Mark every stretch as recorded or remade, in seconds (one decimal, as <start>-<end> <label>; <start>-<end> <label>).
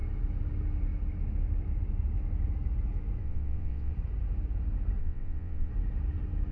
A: 0.0-3.2 recorded; 3.2-3.9 remade; 3.9-5.0 recorded; 5.0-5.7 remade; 5.7-6.5 recorded